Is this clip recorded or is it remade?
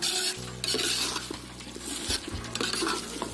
recorded